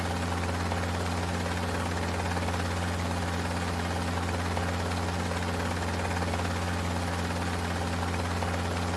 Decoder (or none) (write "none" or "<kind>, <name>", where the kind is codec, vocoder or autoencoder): none